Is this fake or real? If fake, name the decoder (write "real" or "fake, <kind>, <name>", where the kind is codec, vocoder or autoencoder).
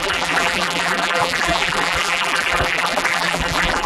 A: fake, vocoder, BigVGAN v2